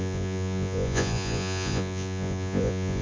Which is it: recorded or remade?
remade